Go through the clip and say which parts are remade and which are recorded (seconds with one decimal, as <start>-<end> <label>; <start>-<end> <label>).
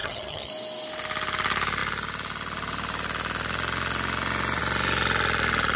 0.0-0.5 remade; 0.5-5.8 recorded